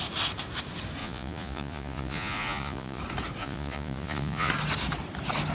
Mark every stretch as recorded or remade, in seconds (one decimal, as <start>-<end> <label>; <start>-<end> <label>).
0.0-1.0 recorded; 1.0-3.0 remade; 3.0-3.4 recorded; 3.4-4.5 remade; 4.5-5.5 recorded